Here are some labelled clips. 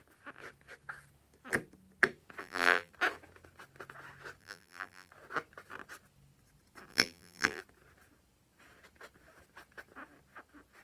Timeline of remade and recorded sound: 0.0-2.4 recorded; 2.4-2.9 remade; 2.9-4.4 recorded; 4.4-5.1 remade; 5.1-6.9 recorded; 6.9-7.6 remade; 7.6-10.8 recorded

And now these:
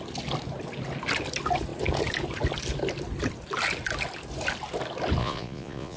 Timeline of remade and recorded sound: 0.0-5.2 recorded; 5.2-6.0 remade

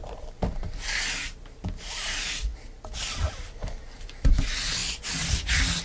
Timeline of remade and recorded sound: 0.0-5.8 recorded

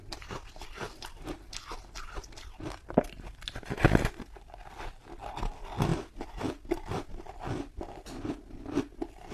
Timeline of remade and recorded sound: 0.0-9.3 recorded

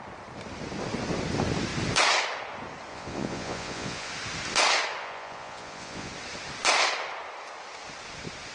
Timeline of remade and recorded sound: 0.0-2.9 recorded; 2.9-4.1 remade; 4.1-5.0 recorded; 5.0-6.1 remade; 6.1-8.5 recorded

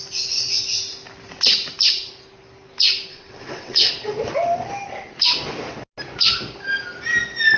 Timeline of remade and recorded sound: 0.0-3.1 recorded; 3.1-3.9 remade; 3.9-7.6 recorded

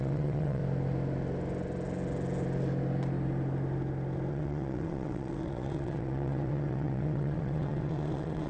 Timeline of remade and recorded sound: 0.0-0.6 remade; 0.6-4.3 recorded; 4.3-8.5 remade

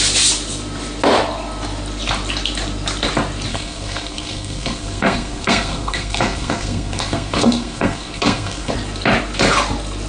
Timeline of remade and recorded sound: 0.0-3.5 recorded; 3.5-8.7 remade; 8.7-10.1 recorded